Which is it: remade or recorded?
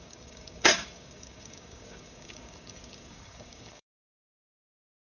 remade